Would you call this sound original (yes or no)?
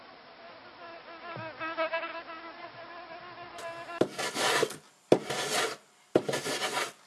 yes